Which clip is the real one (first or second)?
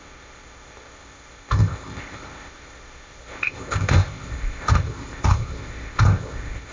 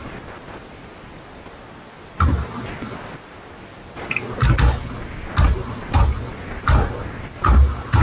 second